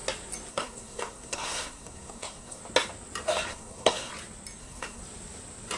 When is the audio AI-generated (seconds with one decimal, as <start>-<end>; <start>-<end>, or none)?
0.5-2.6; 3.5-4.1; 4.6-5.0